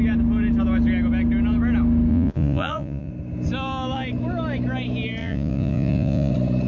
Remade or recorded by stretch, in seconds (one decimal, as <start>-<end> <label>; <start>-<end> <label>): 0.0-2.1 recorded; 2.1-3.1 remade; 3.1-5.2 recorded; 5.2-6.3 remade; 6.3-6.7 recorded